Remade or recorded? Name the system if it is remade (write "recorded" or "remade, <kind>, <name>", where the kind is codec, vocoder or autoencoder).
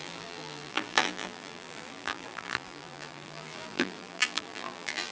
remade, vocoder, BigVGAN v2